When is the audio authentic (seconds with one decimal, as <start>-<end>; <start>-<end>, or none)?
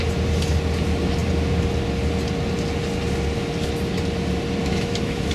0.0-4.6